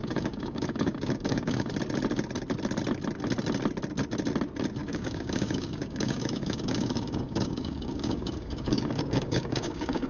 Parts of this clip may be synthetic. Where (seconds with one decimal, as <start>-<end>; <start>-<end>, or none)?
0.0-1.7; 4.8-10.1